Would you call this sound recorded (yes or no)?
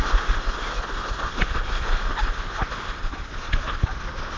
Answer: yes